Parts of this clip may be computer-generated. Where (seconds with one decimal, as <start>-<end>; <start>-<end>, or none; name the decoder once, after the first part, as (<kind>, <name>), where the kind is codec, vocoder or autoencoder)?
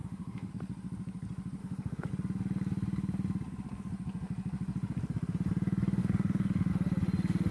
0.0-0.5 (autoencoder, DAC-VAE); 1.6-2.1; 6.0-6.7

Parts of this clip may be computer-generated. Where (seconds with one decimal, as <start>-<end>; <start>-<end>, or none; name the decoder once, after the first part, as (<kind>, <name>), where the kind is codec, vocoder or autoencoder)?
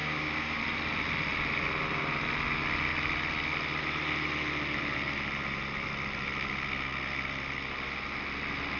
0.0-0.6 (codec, DAC)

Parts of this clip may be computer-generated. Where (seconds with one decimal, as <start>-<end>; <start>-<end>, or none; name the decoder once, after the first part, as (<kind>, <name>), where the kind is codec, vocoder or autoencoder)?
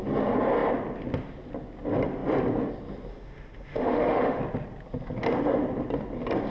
3.1-4.4 (autoencoder, DAC-VAE)